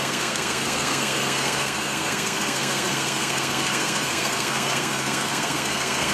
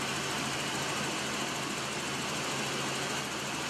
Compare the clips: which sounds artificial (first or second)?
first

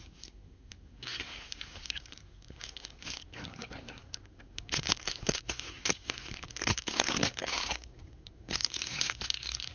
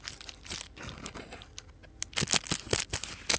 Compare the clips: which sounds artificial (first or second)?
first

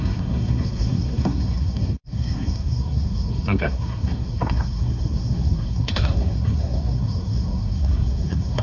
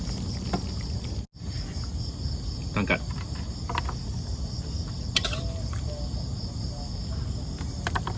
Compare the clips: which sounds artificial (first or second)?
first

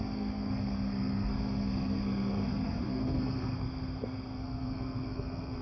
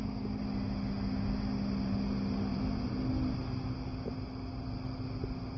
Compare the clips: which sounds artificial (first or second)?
first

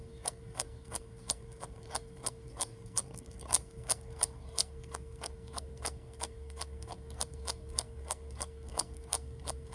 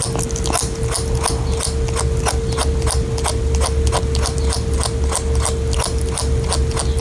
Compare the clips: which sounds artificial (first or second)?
first